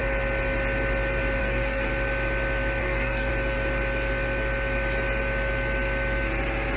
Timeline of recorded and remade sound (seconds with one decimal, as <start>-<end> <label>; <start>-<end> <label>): 0.0-1.4 recorded; 1.4-1.9 remade; 1.9-2.8 recorded; 2.8-3.3 remade; 3.3-6.8 recorded